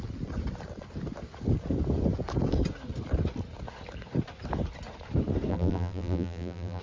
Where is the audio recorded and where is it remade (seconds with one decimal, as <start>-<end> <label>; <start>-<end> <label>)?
0.0-5.5 recorded; 5.5-6.8 remade